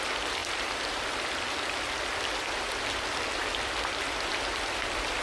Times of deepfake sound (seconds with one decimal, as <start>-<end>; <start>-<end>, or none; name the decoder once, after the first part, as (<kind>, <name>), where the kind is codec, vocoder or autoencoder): none